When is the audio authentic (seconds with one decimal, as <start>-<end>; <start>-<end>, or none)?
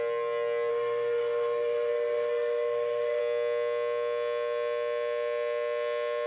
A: 0.0-0.7; 3.2-6.3